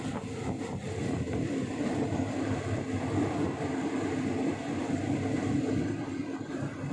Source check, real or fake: real